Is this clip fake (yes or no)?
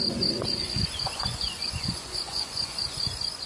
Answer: yes